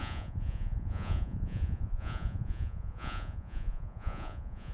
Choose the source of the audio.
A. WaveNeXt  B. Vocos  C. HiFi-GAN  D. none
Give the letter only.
B